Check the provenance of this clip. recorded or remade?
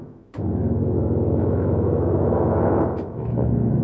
remade